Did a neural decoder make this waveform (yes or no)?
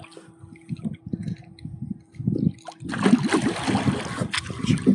no